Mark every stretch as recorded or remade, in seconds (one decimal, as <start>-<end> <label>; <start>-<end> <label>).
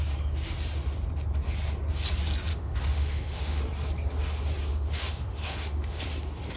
0.0-2.5 recorded; 2.5-3.6 remade; 3.6-4.7 recorded; 4.7-6.0 remade; 6.0-6.6 recorded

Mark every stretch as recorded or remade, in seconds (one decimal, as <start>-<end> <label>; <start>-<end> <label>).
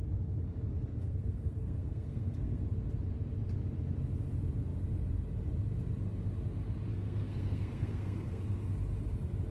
0.0-0.9 recorded; 0.9-2.6 remade; 2.6-6.9 recorded; 6.9-8.4 remade; 8.4-9.5 recorded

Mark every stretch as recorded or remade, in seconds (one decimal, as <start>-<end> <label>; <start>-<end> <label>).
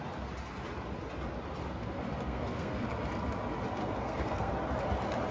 0.0-1.6 recorded; 1.6-2.9 remade; 2.9-3.8 recorded; 3.8-4.5 remade; 4.5-5.3 recorded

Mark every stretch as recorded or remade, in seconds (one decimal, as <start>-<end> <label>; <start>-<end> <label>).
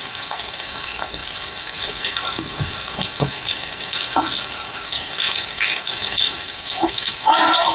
0.0-7.7 remade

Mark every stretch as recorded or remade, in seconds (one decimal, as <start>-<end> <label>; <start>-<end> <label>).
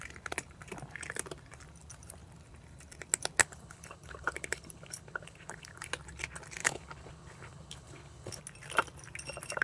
0.0-3.4 recorded; 3.4-5.9 remade; 5.9-6.6 recorded; 6.6-8.4 remade; 8.4-9.6 recorded